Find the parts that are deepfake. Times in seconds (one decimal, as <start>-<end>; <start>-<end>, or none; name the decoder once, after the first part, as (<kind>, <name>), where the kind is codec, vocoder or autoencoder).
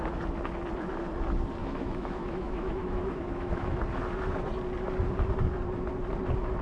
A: 1.6-3.8 (autoencoder, DAC-VAE)